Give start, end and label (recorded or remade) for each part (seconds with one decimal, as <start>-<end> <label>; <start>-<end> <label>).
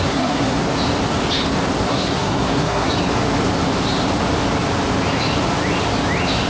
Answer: 0.0-0.6 remade; 0.6-1.8 recorded; 1.8-2.9 remade; 2.9-6.5 recorded